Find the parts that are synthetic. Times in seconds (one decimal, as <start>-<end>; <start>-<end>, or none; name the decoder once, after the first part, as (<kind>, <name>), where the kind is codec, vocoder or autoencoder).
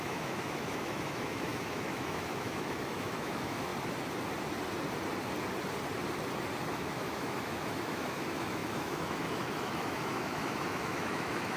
0.0-3.7 (autoencoder, DAC-VAE); 6.7-11.6